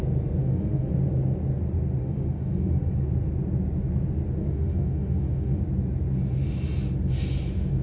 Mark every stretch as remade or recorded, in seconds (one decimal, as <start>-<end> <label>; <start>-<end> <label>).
0.0-0.4 recorded; 0.4-0.9 remade; 0.9-2.0 recorded; 2.0-2.9 remade; 2.9-4.4 recorded; 4.4-5.6 remade; 5.6-7.8 recorded